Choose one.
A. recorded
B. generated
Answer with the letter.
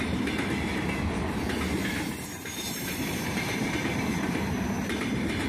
B